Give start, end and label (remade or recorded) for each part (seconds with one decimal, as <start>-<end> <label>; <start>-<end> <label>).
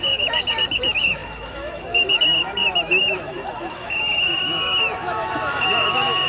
0.0-6.3 remade